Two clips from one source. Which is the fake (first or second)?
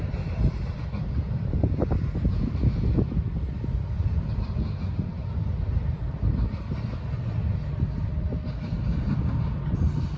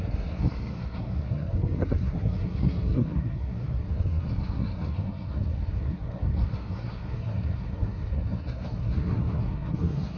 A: second